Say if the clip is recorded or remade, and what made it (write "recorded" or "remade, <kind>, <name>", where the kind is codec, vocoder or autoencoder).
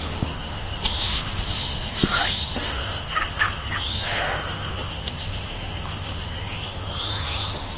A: remade, autoencoder, DAC-VAE